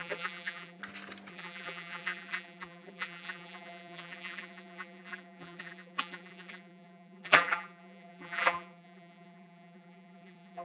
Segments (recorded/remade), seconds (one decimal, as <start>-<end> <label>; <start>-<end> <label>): 0.0-0.8 remade; 0.8-1.3 recorded; 1.3-10.6 remade